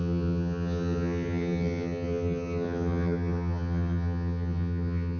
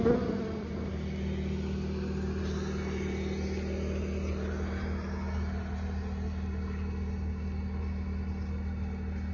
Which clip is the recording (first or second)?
second